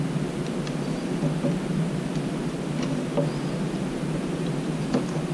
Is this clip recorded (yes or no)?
yes